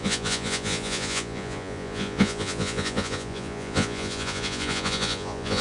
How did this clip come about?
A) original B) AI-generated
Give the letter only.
B